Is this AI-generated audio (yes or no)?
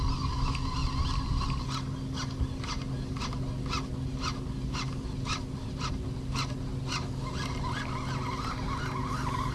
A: no